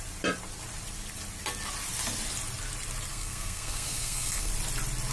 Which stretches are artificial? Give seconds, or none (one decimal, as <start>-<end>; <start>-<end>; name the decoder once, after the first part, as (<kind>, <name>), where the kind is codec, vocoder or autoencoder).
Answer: 3.1-4.5 (codec, SNAC)